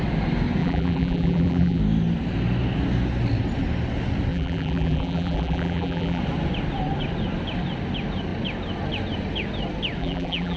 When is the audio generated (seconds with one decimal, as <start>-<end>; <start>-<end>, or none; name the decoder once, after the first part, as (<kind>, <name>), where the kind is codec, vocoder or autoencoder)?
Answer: 0.6-1.8 (vocoder, BigVGAN v2); 4.3-6.2; 10.0-10.6